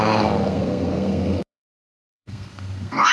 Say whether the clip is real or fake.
fake